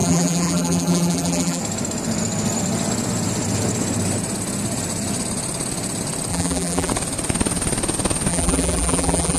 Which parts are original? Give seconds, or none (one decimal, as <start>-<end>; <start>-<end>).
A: 1.6-6.3; 6.9-8.3